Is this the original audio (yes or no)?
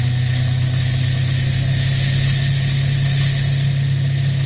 yes